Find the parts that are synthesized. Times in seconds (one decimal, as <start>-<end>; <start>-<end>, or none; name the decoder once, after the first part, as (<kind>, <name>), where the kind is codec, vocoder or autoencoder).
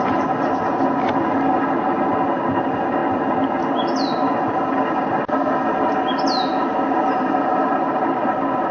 none